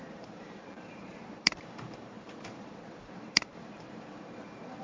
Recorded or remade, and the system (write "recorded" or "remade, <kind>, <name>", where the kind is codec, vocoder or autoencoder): remade, vocoder, BigVGAN v2